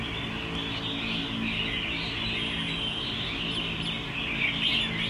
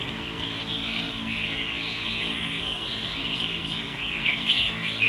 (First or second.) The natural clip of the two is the first